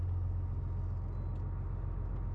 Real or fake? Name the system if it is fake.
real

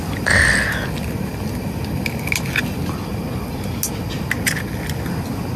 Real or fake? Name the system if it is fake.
real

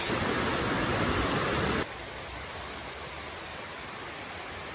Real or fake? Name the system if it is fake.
real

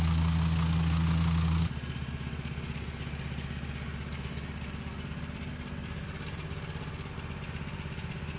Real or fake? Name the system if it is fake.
real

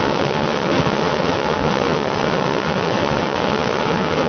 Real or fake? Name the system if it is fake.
fake, vocoder, WaveNeXt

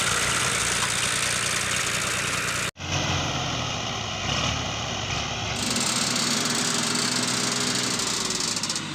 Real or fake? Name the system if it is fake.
real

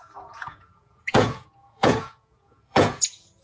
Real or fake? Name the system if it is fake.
fake, vocoder, Vocos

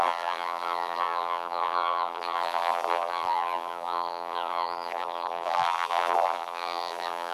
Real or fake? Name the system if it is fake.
fake, vocoder, BigVGAN v2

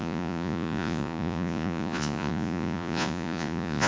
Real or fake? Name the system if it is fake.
fake, vocoder, Vocos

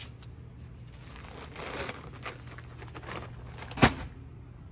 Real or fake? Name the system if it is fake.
real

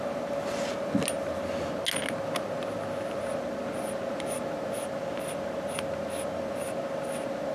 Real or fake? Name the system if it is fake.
real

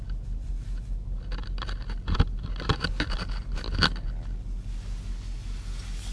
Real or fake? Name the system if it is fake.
real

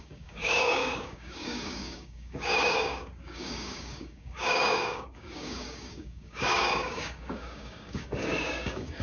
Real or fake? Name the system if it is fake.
fake, codec, DAC